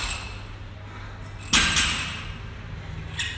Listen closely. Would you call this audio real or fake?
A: real